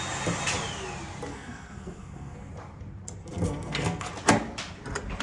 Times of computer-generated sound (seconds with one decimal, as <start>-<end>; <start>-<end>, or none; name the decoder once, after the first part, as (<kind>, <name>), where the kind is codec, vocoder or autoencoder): 1.3-2.5 (codec, SNAC); 3.2-4.1

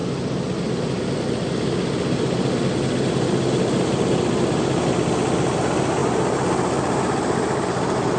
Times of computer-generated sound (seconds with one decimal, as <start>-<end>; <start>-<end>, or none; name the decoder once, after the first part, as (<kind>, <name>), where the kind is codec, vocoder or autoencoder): none

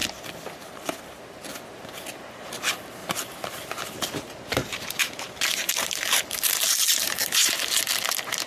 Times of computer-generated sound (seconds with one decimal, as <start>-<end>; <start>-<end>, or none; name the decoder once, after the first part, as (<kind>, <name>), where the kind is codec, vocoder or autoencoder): 3.0-7.8 (vocoder, BigVGAN v2)